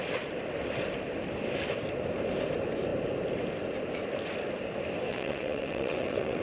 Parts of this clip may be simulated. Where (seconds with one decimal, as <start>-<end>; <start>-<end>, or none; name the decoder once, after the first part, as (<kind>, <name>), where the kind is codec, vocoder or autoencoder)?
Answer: 5.1-6.4 (vocoder, WaveNeXt)